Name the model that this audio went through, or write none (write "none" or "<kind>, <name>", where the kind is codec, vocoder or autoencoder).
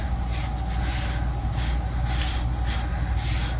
none